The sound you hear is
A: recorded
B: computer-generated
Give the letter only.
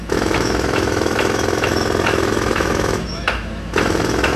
B